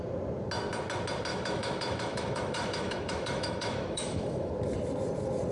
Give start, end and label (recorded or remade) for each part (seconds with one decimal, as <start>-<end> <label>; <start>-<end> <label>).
0.0-1.3 recorded; 1.3-4.5 remade; 4.5-5.5 recorded